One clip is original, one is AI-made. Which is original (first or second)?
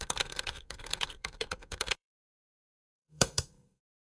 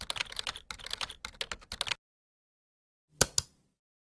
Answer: second